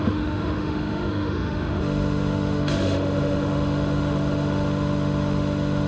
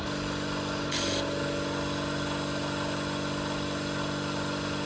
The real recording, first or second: second